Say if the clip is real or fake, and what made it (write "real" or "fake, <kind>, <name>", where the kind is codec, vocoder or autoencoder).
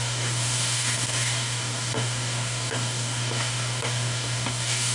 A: fake, codec, DAC